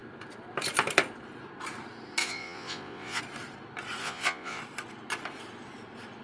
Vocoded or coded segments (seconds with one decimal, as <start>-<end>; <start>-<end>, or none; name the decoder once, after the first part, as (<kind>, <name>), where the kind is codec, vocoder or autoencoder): 2.2-3.2 (vocoder, Vocos); 4.0-4.6